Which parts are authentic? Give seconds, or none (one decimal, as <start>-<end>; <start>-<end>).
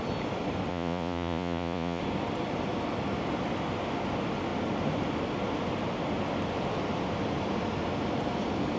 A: 0.0-0.7; 2.0-8.8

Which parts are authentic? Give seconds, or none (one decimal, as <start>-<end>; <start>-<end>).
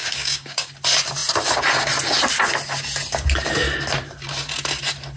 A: 0.7-5.2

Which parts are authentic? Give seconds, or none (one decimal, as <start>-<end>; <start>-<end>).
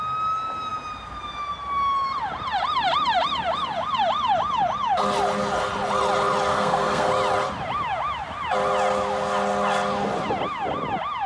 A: 0.0-6.5; 7.1-11.3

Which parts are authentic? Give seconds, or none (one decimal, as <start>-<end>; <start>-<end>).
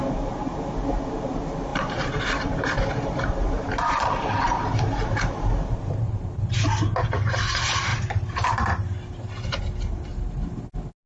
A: 0.0-1.7; 6.5-7.9; 9.6-10.1; 10.6-11.1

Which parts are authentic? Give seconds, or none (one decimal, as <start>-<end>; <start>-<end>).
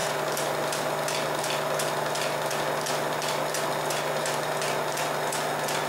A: 0.0-5.9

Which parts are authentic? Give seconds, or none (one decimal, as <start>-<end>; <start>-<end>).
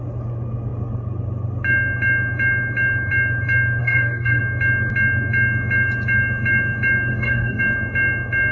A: 0.0-3.8; 4.4-7.1; 7.6-8.5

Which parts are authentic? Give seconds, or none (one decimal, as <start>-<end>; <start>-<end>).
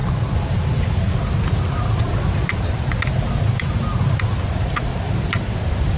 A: 0.0-6.0